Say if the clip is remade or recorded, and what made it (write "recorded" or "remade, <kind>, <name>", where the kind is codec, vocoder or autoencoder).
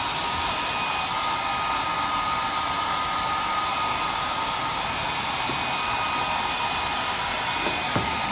recorded